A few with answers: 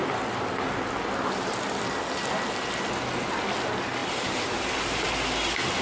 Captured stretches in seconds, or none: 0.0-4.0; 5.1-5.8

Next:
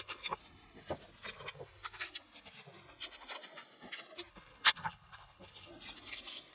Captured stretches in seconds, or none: 0.4-4.3; 5.7-6.5

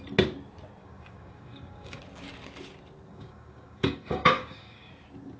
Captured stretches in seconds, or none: 0.0-0.8; 2.0-3.1; 4.9-5.4

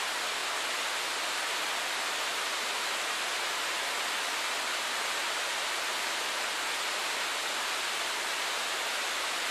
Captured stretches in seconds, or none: 0.0-9.5

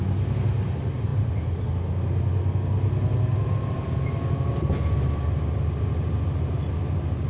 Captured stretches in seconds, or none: 0.0-1.1; 1.7-7.3